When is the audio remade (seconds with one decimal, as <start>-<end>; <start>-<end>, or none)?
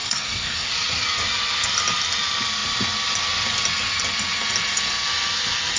0.0-0.7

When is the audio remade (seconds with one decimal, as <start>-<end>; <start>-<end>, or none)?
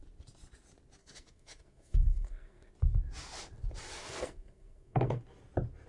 1.0-2.7; 3.9-5.2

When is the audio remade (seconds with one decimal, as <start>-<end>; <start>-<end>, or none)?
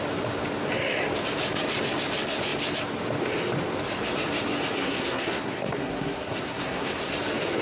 4.8-7.1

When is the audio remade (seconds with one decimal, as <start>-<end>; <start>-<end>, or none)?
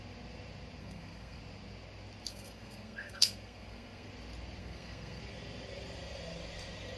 0.8-1.4; 2.3-4.1; 4.6-5.2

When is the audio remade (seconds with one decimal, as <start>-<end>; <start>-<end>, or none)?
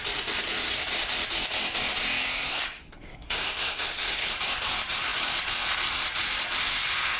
2.5-4.3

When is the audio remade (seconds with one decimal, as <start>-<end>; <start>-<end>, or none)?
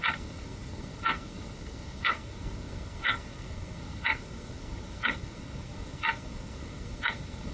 0.0-7.5